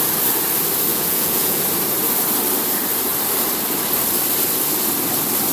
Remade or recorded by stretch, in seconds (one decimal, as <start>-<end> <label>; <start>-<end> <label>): 0.0-0.9 recorded; 0.9-1.6 remade; 1.6-5.5 recorded